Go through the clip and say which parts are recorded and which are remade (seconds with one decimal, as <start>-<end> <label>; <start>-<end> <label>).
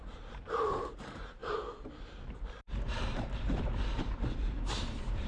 0.0-5.3 remade